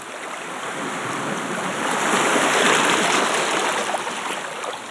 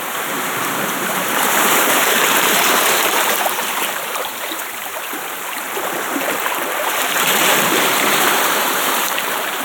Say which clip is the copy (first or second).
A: second